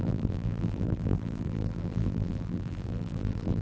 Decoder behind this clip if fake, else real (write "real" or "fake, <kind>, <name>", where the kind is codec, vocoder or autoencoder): fake, vocoder, BigVGAN v2